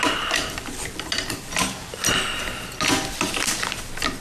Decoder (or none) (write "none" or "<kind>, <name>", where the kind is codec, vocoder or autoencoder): none